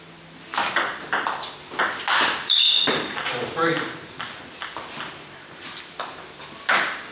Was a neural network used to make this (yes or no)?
yes